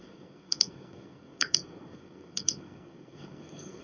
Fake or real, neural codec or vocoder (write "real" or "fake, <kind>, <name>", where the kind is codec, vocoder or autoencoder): fake, codec, SNAC